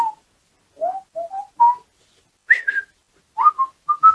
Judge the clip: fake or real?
real